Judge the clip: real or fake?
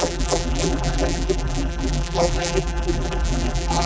fake